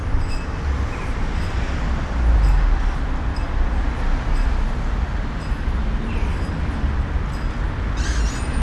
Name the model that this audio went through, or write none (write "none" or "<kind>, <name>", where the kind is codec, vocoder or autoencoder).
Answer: none